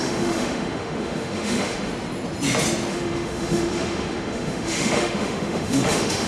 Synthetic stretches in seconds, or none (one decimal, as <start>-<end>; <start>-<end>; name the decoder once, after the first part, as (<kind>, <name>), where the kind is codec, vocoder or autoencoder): 0.0-1.9 (autoencoder, DAC-VAE); 2.9-6.3